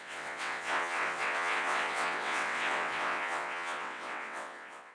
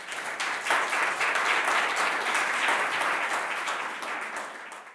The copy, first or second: first